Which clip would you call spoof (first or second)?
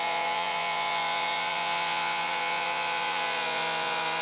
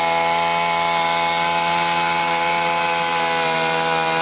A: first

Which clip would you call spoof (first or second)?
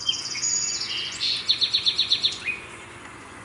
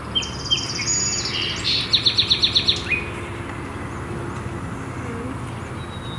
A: first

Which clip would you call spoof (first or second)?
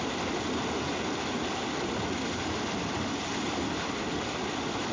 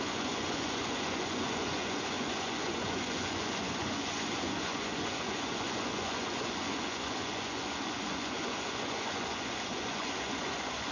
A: second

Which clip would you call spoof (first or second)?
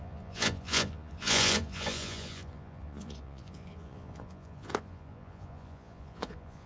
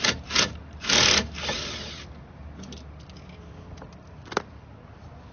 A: first